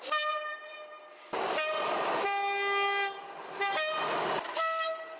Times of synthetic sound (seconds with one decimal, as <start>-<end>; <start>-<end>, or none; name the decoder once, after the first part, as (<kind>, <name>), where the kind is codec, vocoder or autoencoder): none